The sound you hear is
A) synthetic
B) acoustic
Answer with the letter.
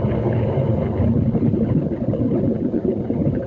A